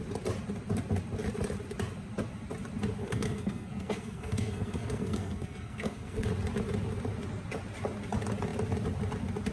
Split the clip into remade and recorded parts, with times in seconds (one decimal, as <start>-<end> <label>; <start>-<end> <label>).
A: 0.0-3.0 recorded; 3.0-6.3 remade; 6.3-9.5 recorded